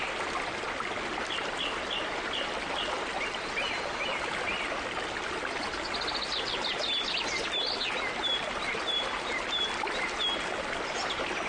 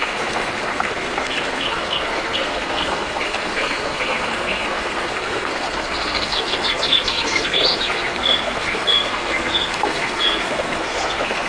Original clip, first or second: first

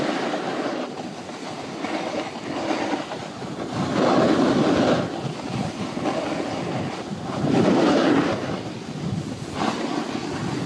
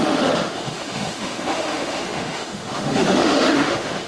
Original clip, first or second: first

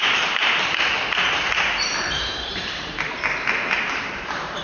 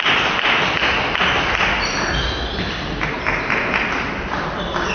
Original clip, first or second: second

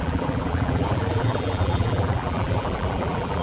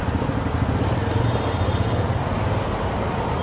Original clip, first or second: second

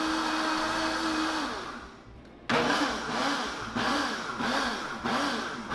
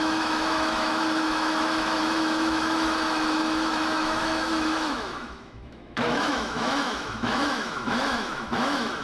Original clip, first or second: first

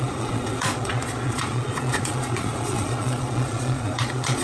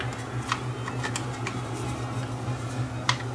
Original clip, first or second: second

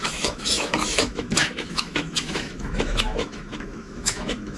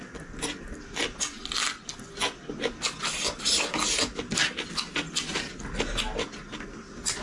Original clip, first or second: second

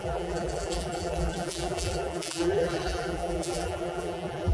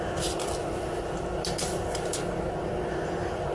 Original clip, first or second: second